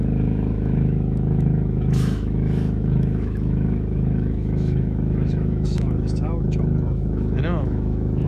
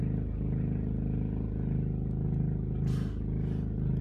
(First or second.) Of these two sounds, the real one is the second